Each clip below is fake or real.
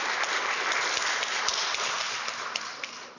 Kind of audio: real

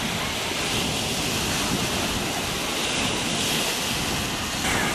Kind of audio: real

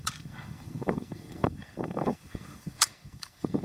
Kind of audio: fake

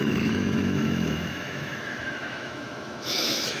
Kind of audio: fake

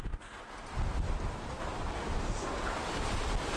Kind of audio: real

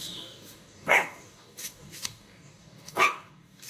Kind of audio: fake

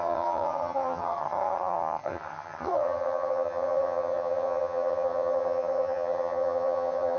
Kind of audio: fake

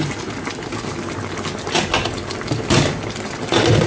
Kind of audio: fake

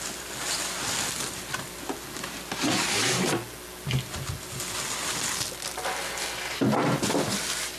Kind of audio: real